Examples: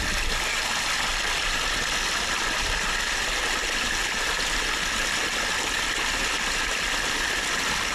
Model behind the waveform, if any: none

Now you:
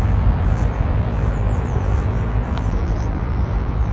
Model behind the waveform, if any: vocoder, BigVGAN v2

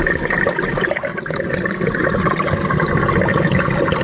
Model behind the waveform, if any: none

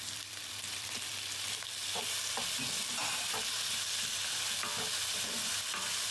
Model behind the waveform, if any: vocoder, BigVGAN v2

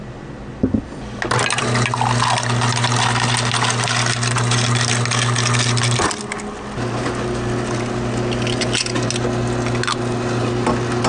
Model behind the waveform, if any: none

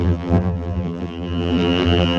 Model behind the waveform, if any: vocoder, BigVGAN v2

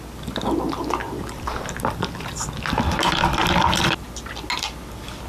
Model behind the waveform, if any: none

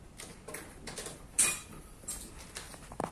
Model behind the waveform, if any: none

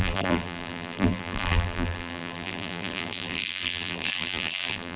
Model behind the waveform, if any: vocoder, BigVGAN v2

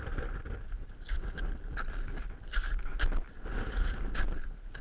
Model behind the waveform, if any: none